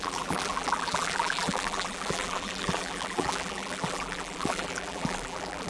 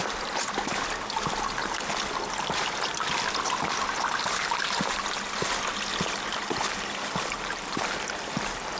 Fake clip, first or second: first